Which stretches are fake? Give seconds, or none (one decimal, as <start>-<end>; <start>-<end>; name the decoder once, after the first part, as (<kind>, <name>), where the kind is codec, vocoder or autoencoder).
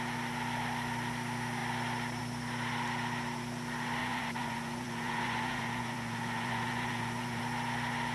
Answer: 4.0-7.4 (vocoder, Vocos)